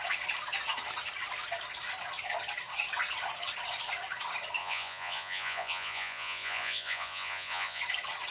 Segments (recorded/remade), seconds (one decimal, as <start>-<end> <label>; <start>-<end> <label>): 0.0-4.6 recorded; 4.6-7.8 remade; 7.8-8.3 recorded